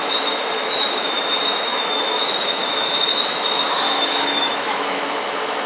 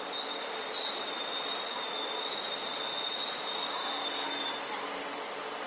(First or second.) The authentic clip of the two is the second